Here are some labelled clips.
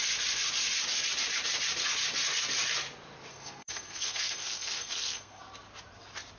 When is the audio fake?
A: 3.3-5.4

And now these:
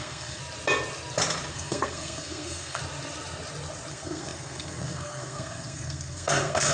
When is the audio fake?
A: 0.0-0.4; 1.5-2.8; 3.9-6.7

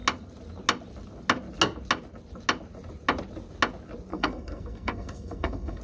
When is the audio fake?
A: 4.1-5.8

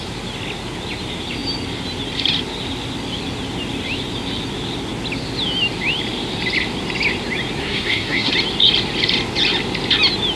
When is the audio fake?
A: 7.6-8.3

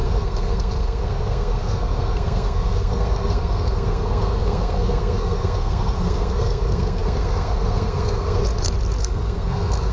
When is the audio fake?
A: 0.0-8.4; 9.0-9.9

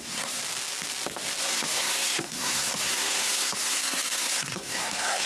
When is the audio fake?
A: 0.0-0.4; 1.4-5.3

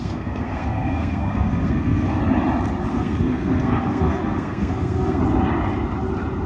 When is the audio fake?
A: 0.0-2.2; 2.9-5.2

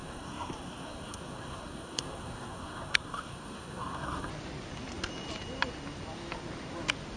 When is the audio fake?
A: 0.0-4.3